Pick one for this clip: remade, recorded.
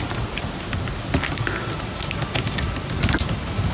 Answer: recorded